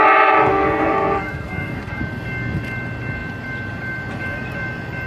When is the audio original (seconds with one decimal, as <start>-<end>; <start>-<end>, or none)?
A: 0.0-0.5; 2.0-5.1

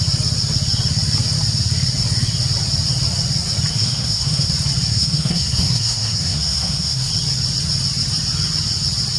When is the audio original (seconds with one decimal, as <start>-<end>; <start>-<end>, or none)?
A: 0.0-3.7; 4.5-4.9; 7.1-9.2